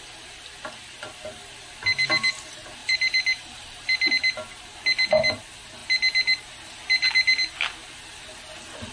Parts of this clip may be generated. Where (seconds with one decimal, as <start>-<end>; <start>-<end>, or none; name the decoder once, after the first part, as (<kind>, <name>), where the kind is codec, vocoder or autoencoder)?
2.8-4.1 (vocoder, BigVGAN v2)